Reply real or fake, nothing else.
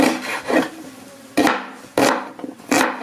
real